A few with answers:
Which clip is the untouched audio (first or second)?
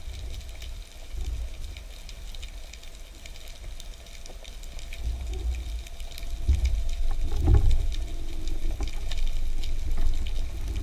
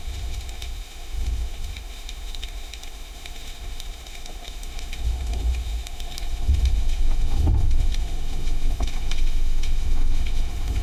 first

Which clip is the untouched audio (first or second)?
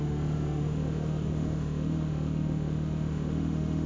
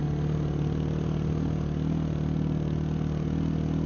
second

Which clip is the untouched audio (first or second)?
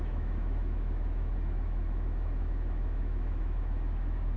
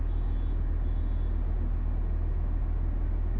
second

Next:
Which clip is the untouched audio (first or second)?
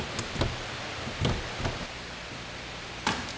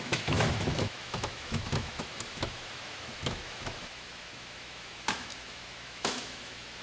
first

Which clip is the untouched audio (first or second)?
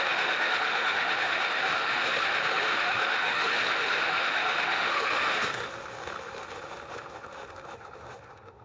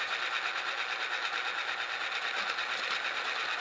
second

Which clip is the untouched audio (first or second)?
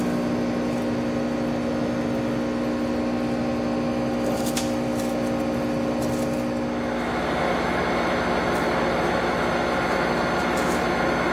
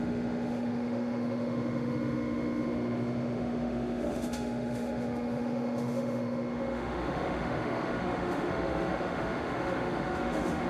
first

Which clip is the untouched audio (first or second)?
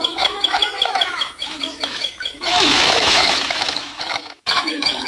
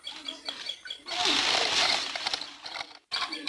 second